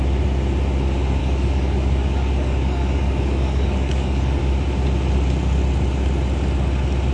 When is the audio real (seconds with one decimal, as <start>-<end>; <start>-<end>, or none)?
0.0-1.2; 4.4-7.1